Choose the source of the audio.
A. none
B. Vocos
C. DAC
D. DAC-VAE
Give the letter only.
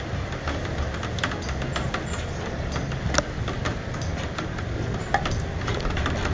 A